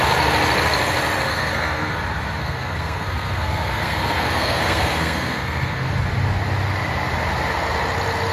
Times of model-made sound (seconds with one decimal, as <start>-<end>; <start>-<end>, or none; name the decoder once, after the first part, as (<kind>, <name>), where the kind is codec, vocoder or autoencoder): 1.3-2.0 (codec, SNAC); 2.4-5.9